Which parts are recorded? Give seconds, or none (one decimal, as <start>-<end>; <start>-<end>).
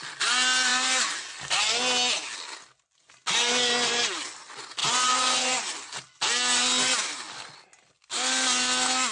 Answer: 0.0-4.8; 5.9-9.1